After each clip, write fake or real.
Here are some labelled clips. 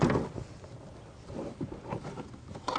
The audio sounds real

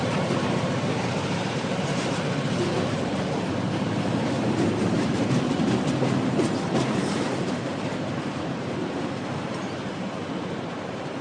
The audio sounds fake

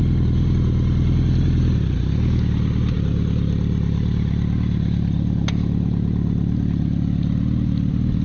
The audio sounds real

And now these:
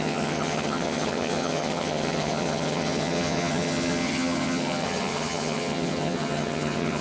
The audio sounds fake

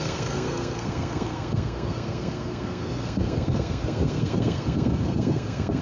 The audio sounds fake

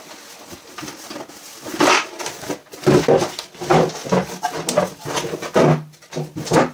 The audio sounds real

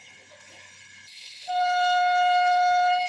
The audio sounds fake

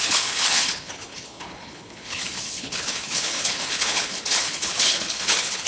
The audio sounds fake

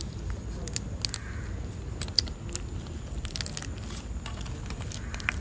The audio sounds real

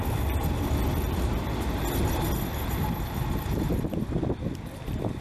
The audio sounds real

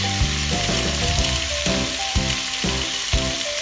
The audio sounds fake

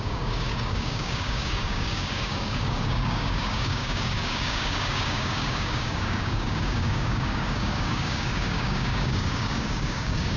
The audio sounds fake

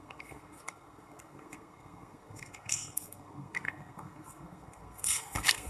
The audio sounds fake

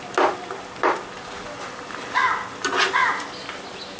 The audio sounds real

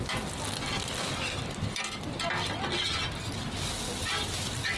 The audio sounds real